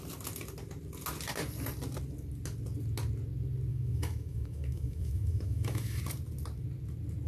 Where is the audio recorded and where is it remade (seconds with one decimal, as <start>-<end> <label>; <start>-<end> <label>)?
0.0-3.7 recorded; 3.7-6.0 remade; 6.0-7.3 recorded